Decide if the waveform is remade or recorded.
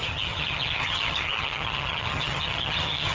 remade